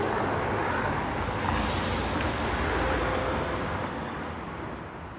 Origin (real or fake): real